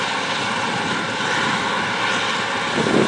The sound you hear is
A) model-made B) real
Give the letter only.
B